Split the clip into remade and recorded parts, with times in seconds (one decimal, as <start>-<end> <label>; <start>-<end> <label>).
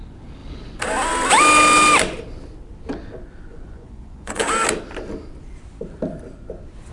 0.0-3.5 recorded; 3.5-4.4 remade; 4.4-6.9 recorded